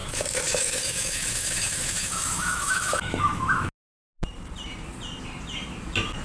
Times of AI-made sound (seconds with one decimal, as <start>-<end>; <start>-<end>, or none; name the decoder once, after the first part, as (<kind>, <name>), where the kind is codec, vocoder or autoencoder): 0.0-3.7 (autoencoder, DAC-VAE)

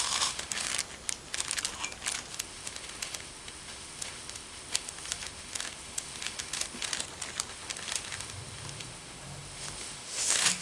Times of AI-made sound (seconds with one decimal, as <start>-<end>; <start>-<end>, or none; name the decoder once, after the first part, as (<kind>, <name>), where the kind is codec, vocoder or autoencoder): 0.0-0.7 (autoencoder, DAC-VAE); 2.3-6.9; 7.5-10.6

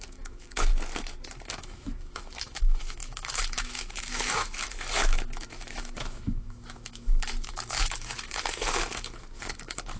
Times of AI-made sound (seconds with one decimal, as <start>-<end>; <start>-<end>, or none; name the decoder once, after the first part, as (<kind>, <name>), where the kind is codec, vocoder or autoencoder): 0.0-0.7 (autoencoder, DAC-VAE); 1.5-10.0

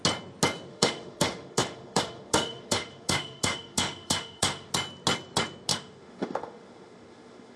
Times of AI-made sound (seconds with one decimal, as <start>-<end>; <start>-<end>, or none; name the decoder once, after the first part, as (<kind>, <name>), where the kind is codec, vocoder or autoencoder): 0.7-4.7 (autoencoder, DAC-VAE); 5.7-7.6

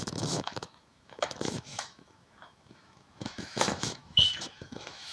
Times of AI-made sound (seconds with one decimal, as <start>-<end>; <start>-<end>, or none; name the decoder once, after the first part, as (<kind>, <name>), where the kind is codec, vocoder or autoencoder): 0.0-5.1 (autoencoder, DAC-VAE)

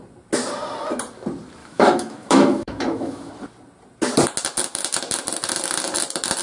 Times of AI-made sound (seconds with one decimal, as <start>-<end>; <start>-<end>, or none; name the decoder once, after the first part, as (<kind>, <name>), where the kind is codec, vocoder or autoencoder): 1.6-3.3 (autoencoder, DAC-VAE)

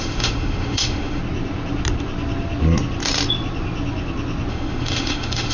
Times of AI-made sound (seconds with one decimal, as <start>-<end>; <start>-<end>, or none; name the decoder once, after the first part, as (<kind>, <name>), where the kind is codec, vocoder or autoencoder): 0.0-1.2 (autoencoder, DAC-VAE); 4.5-5.5

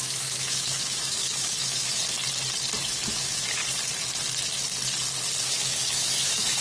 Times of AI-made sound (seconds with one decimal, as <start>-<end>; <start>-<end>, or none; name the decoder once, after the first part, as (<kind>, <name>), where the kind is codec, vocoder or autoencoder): 0.0-2.0 (autoencoder, DAC-VAE); 2.8-3.6; 5.4-6.6